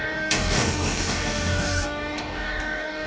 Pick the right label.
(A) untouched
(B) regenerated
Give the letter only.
B